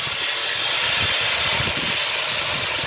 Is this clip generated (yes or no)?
no